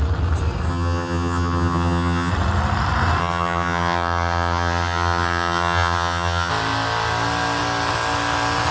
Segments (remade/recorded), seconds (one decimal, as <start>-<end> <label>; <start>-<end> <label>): 0.0-0.7 recorded; 0.7-2.3 remade; 2.3-3.2 recorded; 3.2-6.5 remade; 6.5-8.7 recorded